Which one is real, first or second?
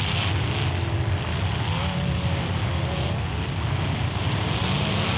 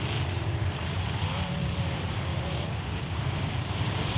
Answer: first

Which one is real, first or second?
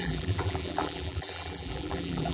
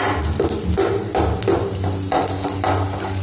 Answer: second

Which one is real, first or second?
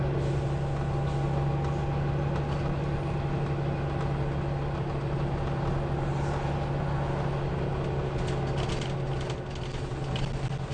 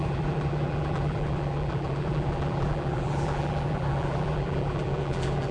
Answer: first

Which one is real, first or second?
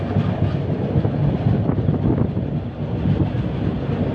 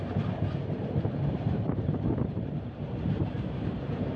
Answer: first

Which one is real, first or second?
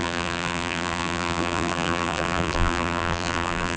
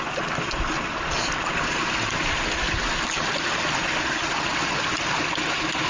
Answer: second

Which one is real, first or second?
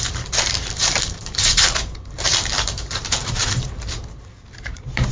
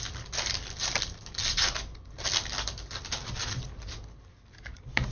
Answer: second